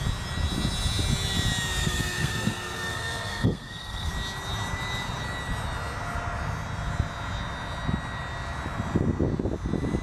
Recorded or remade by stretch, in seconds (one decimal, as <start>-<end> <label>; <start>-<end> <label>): 0.0-1.8 recorded; 1.8-4.1 remade; 4.1-10.0 recorded